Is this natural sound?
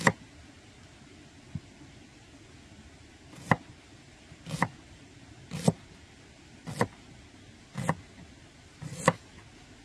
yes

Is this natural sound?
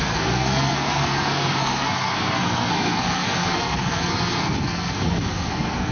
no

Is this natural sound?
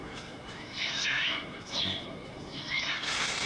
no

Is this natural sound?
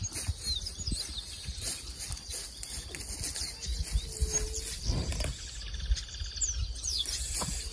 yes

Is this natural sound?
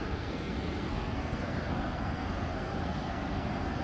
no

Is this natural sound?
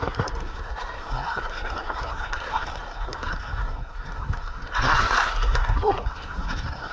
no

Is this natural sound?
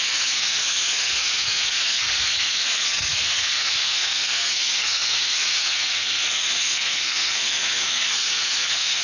no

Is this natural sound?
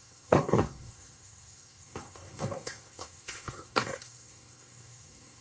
no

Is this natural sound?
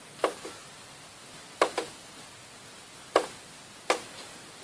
yes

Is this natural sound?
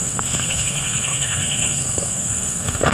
no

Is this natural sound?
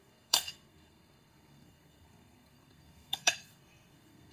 no